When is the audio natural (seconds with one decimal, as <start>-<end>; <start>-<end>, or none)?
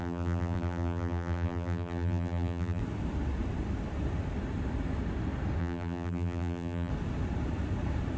2.8-5.6; 6.9-8.2